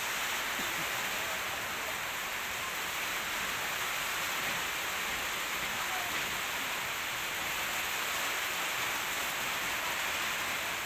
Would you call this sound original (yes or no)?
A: yes